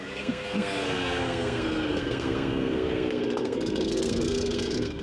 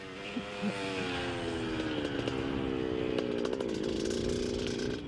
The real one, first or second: second